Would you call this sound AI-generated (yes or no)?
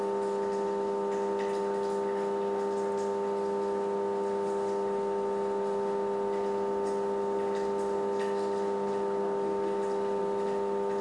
no